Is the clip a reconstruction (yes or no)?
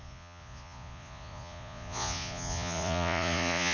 yes